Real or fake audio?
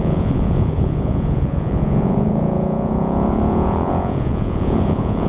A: fake